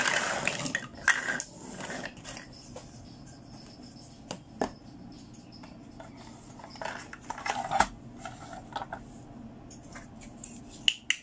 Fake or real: real